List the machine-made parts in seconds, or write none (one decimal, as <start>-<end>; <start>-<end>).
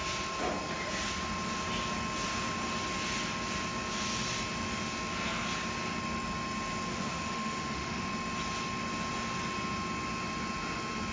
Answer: 6.9-8.1